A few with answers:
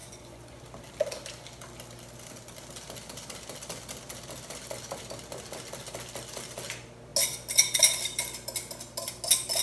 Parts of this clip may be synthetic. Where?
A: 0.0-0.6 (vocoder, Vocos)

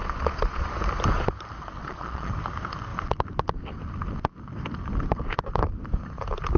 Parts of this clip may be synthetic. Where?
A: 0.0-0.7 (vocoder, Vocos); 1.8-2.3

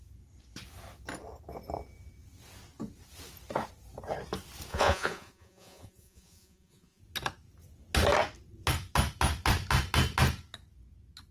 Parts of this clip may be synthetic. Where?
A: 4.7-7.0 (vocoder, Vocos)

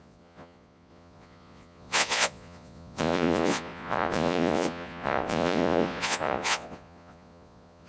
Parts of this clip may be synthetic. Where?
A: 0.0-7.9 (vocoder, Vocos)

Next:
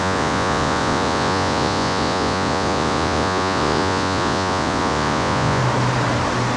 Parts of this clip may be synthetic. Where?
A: 0.0-5.6 (vocoder, Vocos)

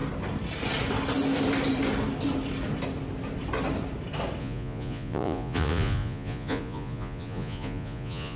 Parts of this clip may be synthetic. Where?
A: 4.4-8.4 (vocoder, Vocos)

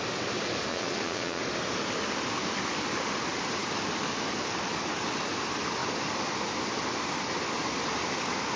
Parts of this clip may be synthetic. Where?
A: 0.7-1.4 (vocoder, Vocos)